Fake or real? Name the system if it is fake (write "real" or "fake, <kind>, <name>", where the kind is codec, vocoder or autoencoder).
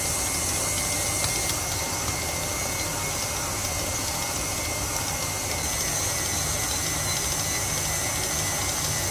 real